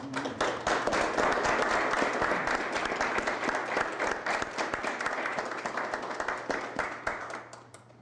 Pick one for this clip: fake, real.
real